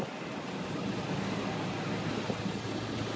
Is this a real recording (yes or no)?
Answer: yes